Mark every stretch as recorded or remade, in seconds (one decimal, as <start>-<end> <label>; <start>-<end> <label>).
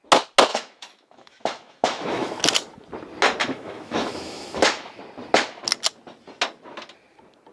0.0-0.5 recorded; 0.5-2.4 remade; 2.4-3.4 recorded; 3.4-5.0 remade; 5.0-7.5 recorded